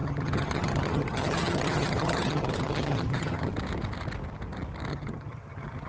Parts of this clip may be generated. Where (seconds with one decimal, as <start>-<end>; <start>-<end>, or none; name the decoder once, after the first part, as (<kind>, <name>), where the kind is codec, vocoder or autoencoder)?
0.0-3.5 (vocoder, HiFi-GAN); 4.9-5.9